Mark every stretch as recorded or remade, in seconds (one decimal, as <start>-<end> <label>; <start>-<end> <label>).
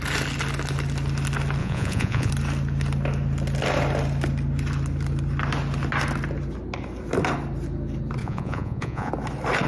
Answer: 0.0-1.6 recorded; 1.6-2.3 remade; 2.3-8.2 recorded; 8.2-9.1 remade; 9.1-9.7 recorded